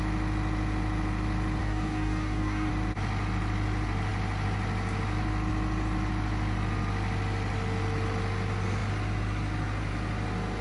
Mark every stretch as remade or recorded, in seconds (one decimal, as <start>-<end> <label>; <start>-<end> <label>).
0.0-1.6 recorded; 1.6-2.7 remade; 2.7-10.6 recorded